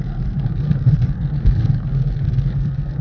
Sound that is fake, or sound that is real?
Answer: fake